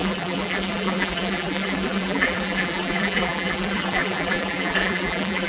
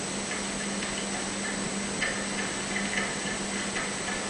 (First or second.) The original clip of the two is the second